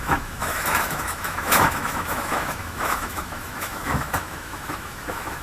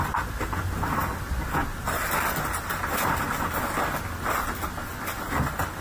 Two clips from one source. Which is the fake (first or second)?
first